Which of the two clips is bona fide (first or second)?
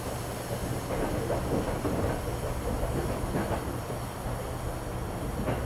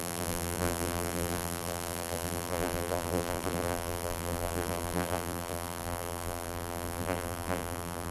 first